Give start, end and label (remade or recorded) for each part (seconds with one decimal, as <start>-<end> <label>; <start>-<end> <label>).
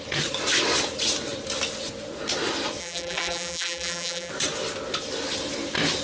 0.0-2.8 recorded; 2.8-4.3 remade; 4.3-6.0 recorded